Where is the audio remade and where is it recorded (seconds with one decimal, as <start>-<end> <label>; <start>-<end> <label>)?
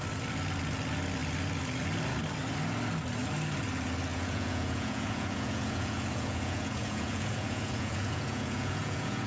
0.0-4.1 recorded; 4.1-9.3 remade